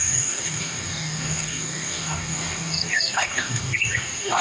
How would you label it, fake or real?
fake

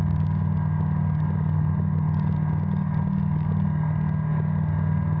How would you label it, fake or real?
fake